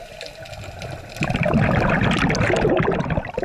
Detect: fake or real real